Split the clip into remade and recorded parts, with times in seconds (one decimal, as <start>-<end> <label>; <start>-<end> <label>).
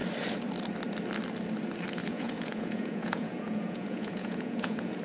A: 0.0-2.0 recorded; 2.0-5.0 remade